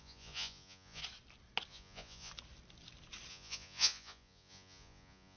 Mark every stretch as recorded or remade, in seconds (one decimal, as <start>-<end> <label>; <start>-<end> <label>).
0.0-1.0 remade; 1.0-1.7 recorded; 1.7-2.3 remade; 2.3-3.3 recorded; 3.3-5.4 remade